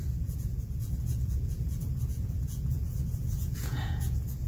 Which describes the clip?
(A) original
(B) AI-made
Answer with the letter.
B